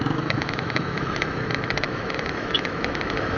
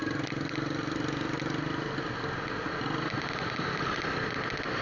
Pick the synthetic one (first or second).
first